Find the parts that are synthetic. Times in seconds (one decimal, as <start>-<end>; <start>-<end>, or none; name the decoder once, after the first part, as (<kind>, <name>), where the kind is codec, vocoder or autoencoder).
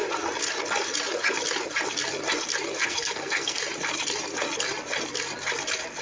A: 2.8-3.6 (codec, SNAC)